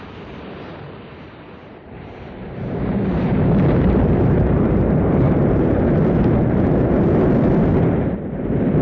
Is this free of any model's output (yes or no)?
no